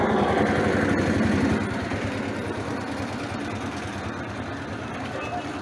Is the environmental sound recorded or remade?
recorded